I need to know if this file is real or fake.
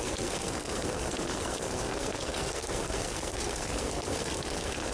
fake